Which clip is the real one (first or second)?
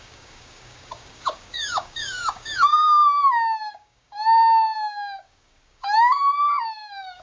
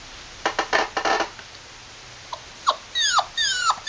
second